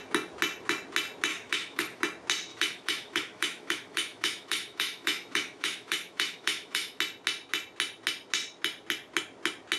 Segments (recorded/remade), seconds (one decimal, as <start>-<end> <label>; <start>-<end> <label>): 0.0-1.3 recorded; 1.3-2.0 remade; 2.0-2.5 recorded; 2.5-7.0 remade; 7.0-9.8 recorded